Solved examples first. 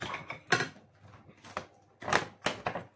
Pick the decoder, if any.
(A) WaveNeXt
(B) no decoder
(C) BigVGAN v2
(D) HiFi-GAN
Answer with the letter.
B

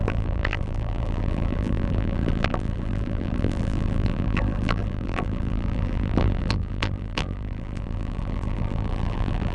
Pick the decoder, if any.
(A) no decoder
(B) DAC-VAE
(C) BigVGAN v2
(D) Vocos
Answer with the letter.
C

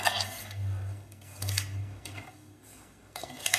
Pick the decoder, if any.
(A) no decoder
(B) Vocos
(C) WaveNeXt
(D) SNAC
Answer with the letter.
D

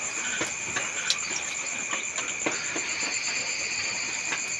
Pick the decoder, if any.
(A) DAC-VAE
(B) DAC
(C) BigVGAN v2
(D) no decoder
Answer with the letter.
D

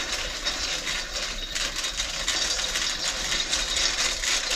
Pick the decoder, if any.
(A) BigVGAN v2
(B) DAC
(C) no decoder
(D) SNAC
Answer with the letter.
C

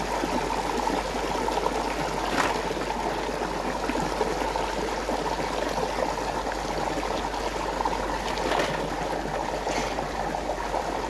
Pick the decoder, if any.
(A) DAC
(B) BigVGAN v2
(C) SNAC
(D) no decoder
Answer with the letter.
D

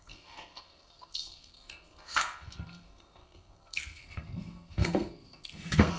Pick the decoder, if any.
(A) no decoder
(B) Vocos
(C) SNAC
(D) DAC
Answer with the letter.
C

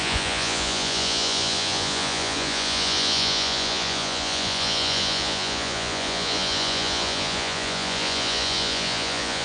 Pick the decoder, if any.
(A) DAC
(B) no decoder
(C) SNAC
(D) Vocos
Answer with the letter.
D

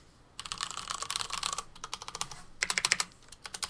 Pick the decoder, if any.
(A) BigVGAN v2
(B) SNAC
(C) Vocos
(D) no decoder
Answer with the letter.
D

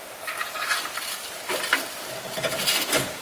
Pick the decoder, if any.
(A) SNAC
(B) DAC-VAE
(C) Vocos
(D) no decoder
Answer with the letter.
D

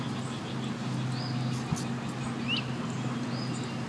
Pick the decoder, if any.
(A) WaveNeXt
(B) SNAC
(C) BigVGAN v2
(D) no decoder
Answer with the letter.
D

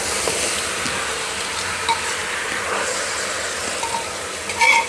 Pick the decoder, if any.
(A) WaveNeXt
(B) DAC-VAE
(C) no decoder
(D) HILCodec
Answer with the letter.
C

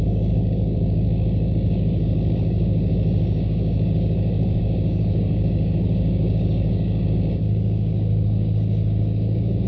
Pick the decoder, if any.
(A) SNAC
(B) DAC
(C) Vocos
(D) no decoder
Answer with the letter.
B